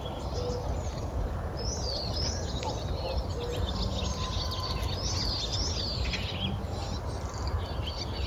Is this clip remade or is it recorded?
recorded